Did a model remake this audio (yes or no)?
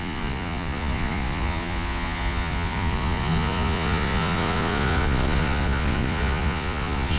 yes